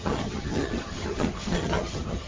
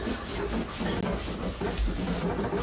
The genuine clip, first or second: second